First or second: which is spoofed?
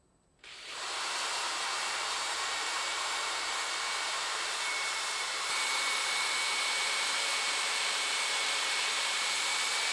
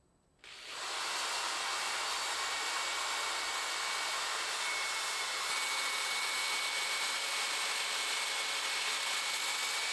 first